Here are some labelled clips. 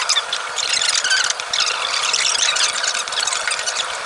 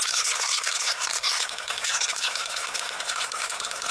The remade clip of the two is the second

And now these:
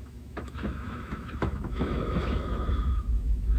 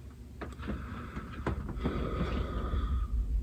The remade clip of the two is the first